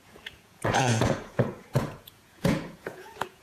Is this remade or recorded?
remade